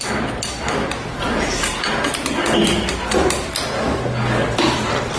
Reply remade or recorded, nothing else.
recorded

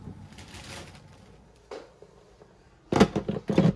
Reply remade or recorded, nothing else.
recorded